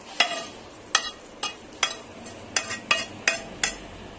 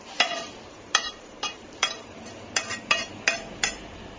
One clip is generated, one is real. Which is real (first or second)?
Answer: first